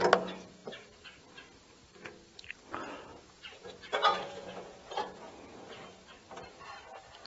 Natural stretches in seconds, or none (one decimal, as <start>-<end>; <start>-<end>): 0.0-3.1; 5.7-7.3